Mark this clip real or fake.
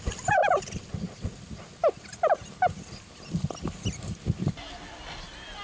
real